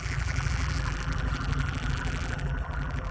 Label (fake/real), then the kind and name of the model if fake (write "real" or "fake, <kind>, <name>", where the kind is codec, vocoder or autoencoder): fake, vocoder, BigVGAN v2